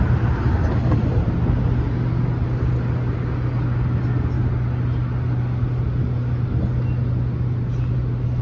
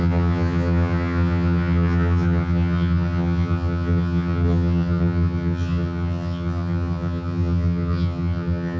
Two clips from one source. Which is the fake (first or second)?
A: second